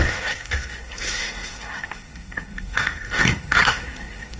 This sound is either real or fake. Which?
fake